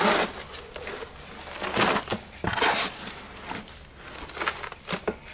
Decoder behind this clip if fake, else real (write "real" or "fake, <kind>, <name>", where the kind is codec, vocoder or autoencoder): real